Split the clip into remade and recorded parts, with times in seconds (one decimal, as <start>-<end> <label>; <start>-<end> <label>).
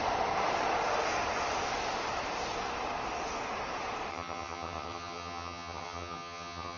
0.0-4.1 recorded; 4.1-6.8 remade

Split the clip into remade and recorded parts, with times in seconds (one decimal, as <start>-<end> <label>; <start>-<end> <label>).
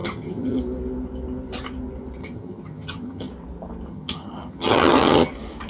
0.0-0.6 remade; 0.6-2.2 recorded; 2.2-3.3 remade; 3.3-3.9 recorded; 3.9-5.3 remade; 5.3-5.7 recorded